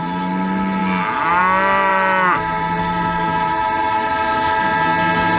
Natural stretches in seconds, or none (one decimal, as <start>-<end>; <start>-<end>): 0.0-5.4